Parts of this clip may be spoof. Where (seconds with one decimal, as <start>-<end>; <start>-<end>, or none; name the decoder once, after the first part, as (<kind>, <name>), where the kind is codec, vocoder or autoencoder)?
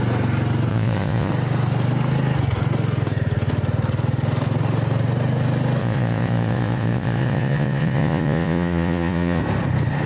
0.7-1.3 (vocoder, Vocos); 5.8-9.4